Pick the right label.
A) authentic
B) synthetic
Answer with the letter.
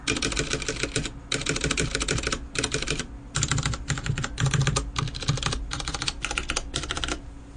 A